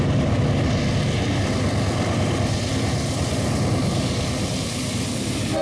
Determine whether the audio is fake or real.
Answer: real